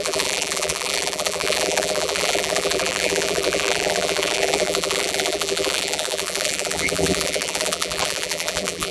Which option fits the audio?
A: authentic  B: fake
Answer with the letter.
B